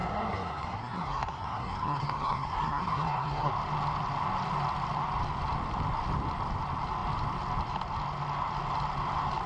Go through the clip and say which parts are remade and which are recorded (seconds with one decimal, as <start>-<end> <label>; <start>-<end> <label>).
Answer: 0.0-3.5 remade; 3.5-9.5 recorded